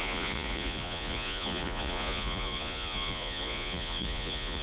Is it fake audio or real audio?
fake